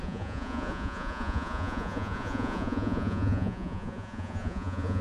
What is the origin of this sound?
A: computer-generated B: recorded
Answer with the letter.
A